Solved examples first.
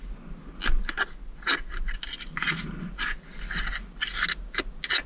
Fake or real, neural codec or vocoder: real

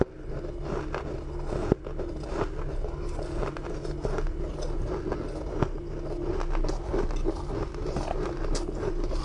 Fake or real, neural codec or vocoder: real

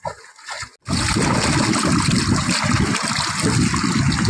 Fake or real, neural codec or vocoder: real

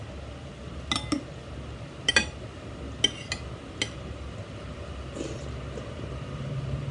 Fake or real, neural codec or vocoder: real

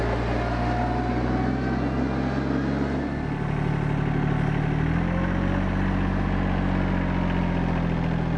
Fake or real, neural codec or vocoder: real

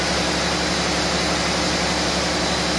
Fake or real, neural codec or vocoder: real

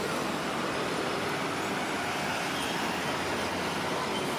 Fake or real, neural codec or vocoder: real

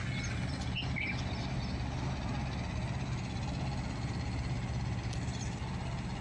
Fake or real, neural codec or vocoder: real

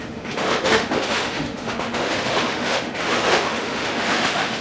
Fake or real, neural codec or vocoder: fake, autoencoder, DAC-VAE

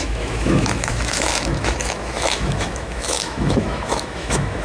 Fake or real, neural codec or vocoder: fake, autoencoder, DAC-VAE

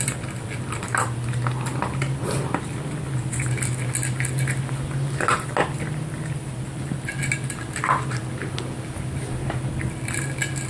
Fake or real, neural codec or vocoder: real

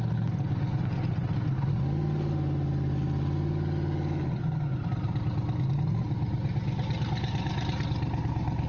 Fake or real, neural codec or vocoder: real